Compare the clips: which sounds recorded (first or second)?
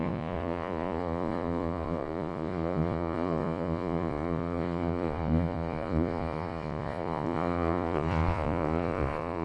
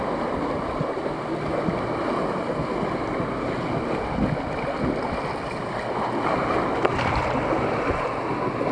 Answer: second